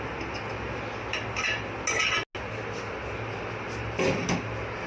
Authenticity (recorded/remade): recorded